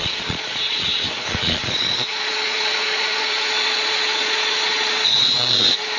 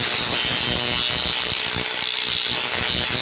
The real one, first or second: second